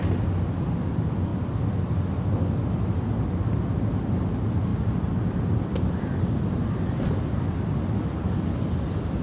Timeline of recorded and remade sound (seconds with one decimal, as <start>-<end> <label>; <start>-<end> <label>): 0.0-9.2 recorded